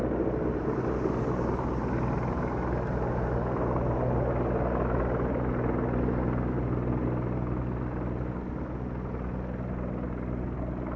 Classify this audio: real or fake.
real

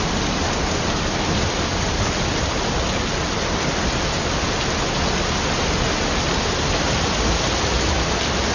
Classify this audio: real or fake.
real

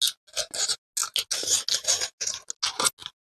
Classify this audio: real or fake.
real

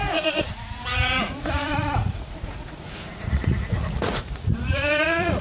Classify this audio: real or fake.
fake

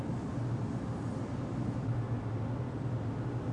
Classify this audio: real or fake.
real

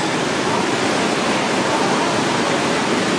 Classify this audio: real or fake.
real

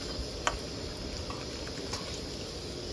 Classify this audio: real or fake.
real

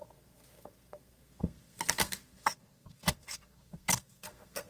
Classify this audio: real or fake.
fake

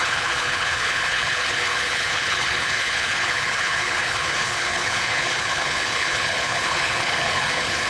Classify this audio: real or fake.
fake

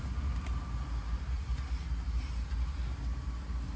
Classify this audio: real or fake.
real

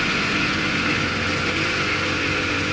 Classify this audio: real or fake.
fake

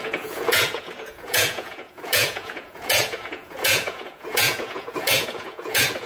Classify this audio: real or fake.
fake